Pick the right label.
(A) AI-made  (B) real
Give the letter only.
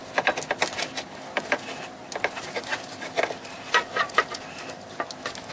B